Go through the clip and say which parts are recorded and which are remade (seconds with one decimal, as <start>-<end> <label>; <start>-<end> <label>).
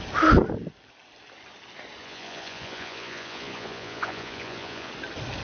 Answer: 0.0-2.0 recorded; 2.0-4.9 remade; 4.9-5.4 recorded